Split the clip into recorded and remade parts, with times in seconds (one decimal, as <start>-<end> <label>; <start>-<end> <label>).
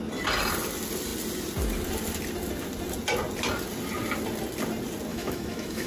0.0-5.1 recorded; 5.1-5.9 remade